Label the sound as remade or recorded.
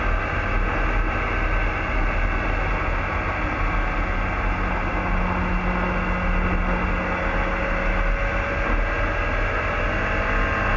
recorded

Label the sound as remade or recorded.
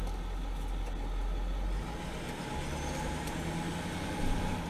recorded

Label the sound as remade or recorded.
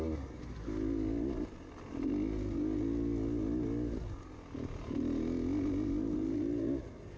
recorded